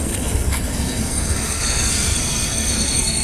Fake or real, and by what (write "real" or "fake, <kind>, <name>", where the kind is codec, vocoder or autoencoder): fake, codec, SNAC